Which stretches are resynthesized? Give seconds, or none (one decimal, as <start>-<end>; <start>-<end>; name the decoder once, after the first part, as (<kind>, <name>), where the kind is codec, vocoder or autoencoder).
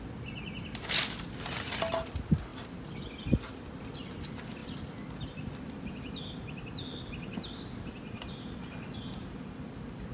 none